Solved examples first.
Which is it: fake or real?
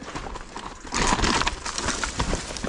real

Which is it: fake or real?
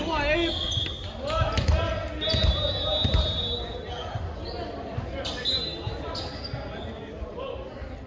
real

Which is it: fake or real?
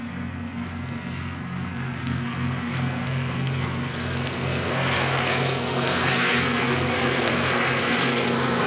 fake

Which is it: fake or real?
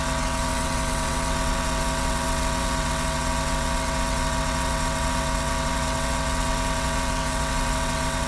fake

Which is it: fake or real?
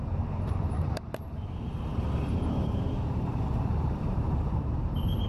fake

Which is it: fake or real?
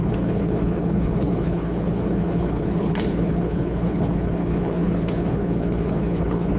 fake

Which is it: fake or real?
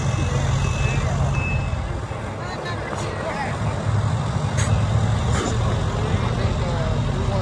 real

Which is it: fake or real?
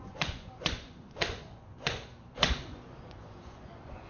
fake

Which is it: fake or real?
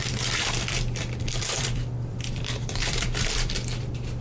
fake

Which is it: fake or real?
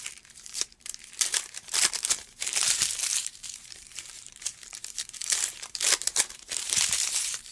fake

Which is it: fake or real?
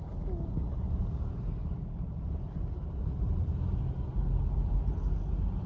real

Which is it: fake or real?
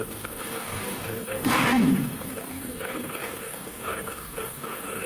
fake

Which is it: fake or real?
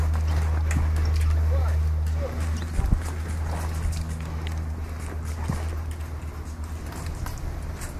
real